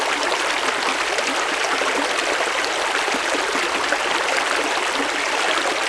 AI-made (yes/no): no